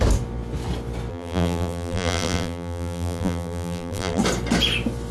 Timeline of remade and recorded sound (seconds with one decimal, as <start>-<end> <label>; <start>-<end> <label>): 0.0-1.1 recorded; 1.1-4.2 remade; 4.2-5.1 recorded